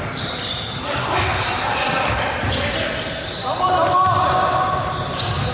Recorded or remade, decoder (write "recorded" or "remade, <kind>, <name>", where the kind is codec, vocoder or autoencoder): recorded